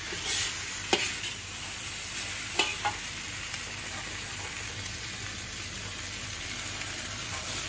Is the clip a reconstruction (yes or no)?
yes